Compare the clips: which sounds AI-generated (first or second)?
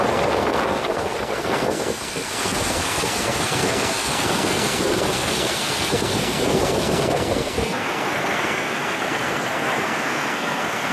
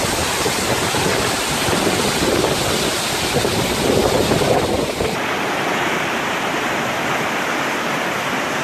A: first